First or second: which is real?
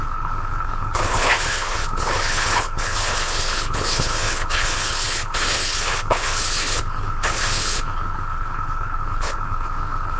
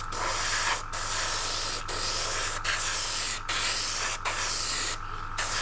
second